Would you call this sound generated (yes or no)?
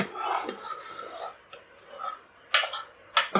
no